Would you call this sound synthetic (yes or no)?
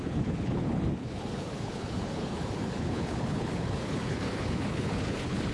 yes